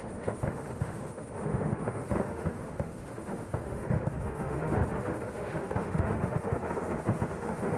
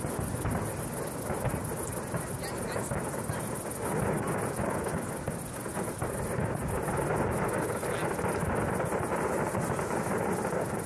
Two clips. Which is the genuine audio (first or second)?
second